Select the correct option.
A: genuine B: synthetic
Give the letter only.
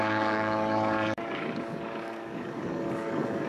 B